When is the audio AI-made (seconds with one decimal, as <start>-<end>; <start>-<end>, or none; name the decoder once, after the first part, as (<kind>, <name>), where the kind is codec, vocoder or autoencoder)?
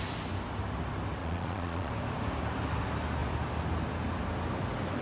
1.2-1.9 (vocoder, Vocos)